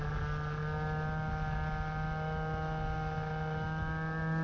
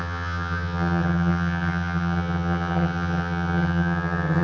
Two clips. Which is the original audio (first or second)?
first